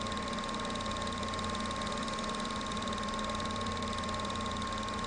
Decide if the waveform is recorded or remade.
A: remade